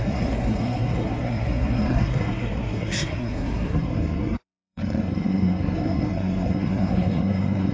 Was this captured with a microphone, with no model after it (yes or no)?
no